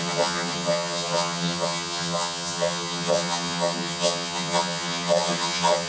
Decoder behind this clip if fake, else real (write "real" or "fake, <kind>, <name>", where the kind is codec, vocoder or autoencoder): fake, vocoder, HiFi-GAN